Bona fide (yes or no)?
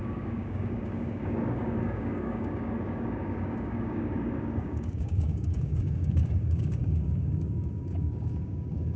no